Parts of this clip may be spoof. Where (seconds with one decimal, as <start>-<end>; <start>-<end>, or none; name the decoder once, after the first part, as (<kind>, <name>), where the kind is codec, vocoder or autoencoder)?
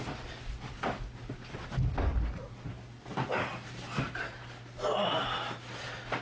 none